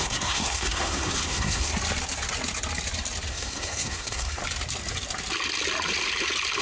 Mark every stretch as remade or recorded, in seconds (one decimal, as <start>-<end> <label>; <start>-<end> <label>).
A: 0.0-1.7 remade; 1.7-3.3 recorded; 3.3-4.4 remade; 4.4-6.6 recorded